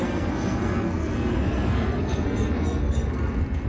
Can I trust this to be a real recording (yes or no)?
no